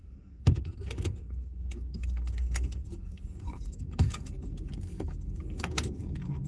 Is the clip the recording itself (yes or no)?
no